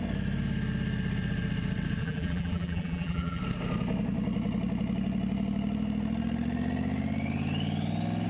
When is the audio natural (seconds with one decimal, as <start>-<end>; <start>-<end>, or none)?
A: 0.0-2.0; 3.4-8.3